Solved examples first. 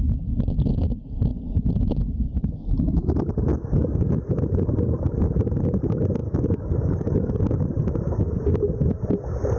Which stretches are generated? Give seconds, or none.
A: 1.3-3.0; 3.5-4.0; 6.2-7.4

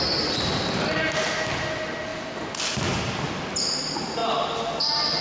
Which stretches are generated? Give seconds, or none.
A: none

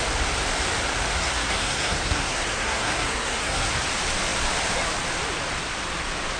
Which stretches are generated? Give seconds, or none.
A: 1.2-3.7

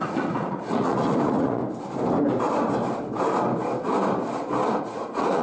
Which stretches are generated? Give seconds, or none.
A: 0.0-1.6; 4.8-5.4

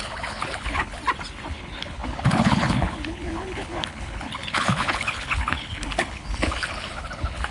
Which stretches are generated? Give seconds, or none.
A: 0.0-1.0; 1.5-7.5

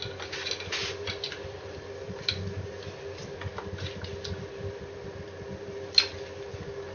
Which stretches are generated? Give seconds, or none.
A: 0.8-2.3

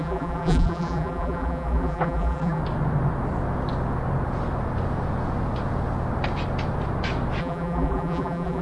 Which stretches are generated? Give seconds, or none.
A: 0.0-2.6; 7.4-8.6

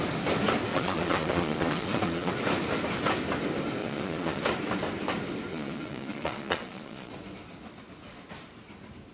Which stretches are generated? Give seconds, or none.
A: 0.7-2.3; 3.8-4.4; 5.5-7.1